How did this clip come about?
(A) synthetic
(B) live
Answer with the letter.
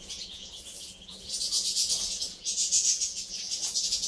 A